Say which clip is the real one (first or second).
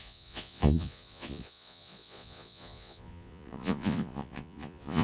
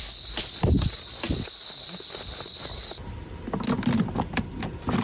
second